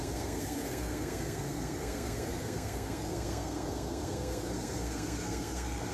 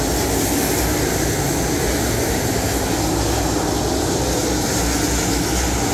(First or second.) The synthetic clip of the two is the first